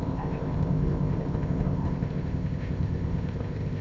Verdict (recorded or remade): remade